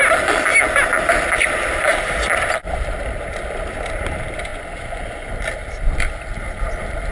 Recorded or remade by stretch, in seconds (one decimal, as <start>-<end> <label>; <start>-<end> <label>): 0.0-4.5 recorded; 4.5-5.3 remade; 5.3-7.1 recorded